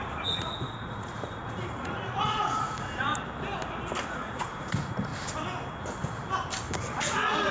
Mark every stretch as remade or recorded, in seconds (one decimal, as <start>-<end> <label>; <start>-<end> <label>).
0.0-3.1 remade; 3.1-4.1 recorded; 4.1-5.1 remade; 5.1-6.9 recorded; 6.9-7.5 remade